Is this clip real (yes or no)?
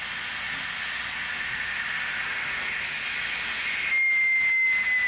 yes